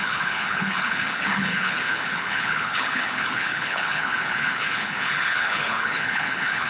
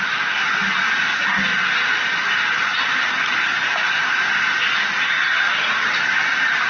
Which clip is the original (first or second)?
second